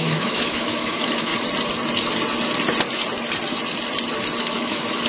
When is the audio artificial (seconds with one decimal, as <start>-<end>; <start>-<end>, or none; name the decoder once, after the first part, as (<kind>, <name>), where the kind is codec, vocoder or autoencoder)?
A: 0.0-1.3 (autoencoder, DAC-VAE); 4.4-5.1